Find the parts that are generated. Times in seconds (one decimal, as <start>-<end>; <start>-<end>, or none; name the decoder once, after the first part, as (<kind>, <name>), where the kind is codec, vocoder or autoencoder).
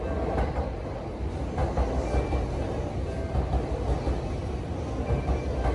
none